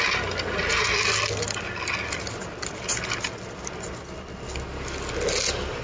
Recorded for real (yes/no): yes